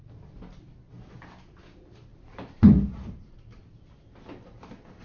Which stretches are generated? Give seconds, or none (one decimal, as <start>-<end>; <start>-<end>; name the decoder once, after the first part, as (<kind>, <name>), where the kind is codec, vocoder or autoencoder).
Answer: 2.1-3.6 (vocoder, BigVGAN v2)